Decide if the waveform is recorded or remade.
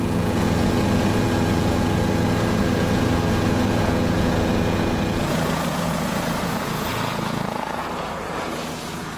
remade